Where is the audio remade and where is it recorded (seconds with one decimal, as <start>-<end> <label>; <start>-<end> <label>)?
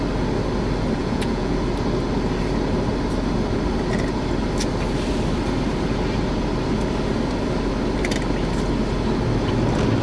0.0-1.0 recorded; 1.0-1.5 remade; 1.5-10.0 recorded